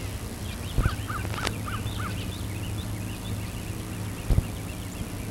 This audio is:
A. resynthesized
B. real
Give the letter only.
B